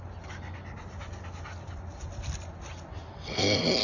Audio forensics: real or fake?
real